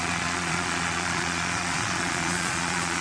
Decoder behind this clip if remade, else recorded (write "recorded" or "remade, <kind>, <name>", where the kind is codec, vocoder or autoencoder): remade, vocoder, Vocos